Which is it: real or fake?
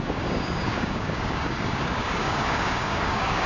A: fake